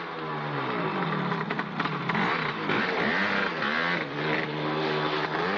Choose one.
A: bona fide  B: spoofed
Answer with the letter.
A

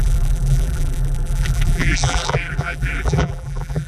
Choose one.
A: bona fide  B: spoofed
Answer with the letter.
B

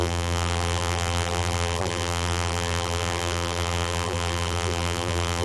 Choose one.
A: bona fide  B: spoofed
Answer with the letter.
B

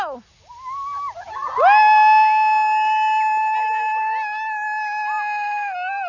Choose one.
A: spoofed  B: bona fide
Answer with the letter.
B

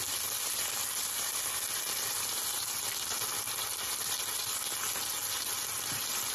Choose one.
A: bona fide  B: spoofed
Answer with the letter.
A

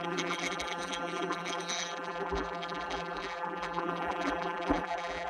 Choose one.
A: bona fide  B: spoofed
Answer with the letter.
B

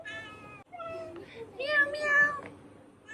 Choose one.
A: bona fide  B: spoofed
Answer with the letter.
A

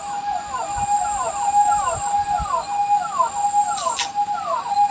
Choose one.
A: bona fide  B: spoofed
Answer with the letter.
A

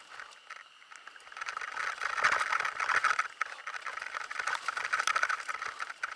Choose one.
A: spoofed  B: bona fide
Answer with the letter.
B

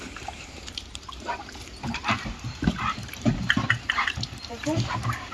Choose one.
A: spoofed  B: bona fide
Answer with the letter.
A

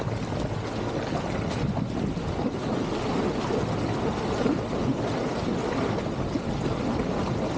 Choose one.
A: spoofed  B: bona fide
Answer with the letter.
B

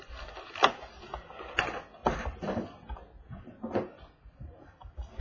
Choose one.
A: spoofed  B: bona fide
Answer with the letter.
B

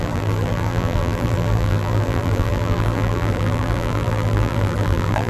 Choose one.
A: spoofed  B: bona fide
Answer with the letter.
A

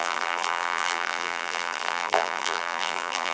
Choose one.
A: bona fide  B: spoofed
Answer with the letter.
B